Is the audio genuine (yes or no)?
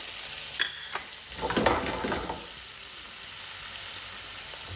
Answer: yes